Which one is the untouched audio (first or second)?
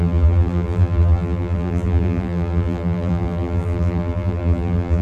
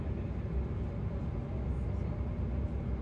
second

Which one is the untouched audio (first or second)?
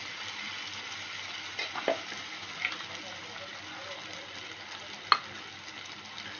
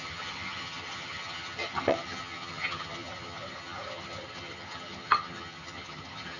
first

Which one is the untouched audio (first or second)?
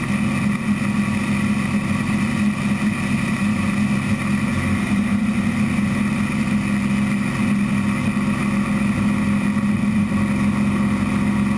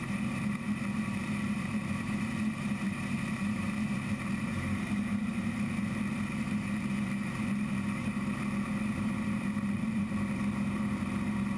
first